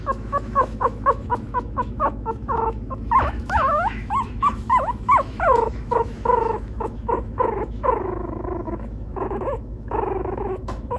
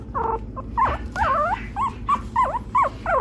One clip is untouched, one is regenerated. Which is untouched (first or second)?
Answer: second